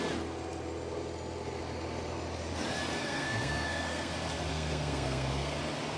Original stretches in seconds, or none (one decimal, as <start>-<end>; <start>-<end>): 0.0-3.0; 4.1-4.5; 5.6-6.0